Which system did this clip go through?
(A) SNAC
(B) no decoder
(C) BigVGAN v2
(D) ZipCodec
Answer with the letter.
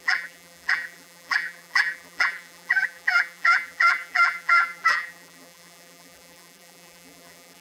C